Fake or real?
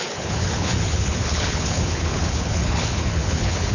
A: fake